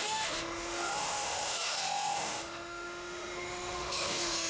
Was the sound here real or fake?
fake